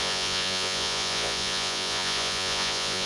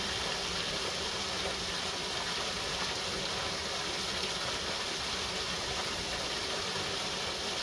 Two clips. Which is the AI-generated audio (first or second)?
first